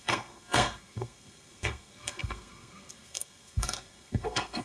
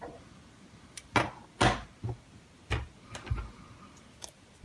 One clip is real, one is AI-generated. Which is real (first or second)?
second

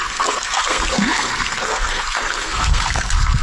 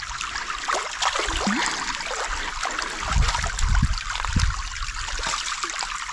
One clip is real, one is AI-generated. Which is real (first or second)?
second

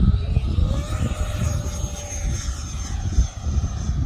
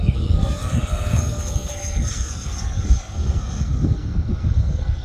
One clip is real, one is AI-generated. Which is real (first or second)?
first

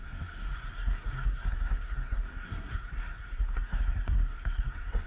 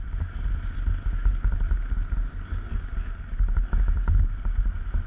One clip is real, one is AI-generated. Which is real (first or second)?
second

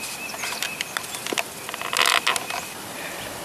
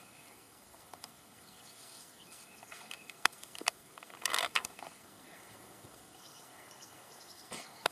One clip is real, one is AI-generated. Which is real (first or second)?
first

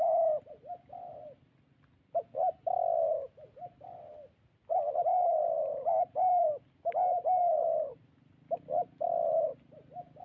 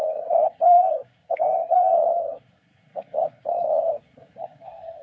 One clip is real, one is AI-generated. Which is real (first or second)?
first